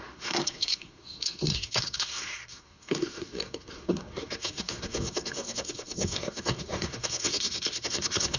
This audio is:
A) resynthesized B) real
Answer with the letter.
A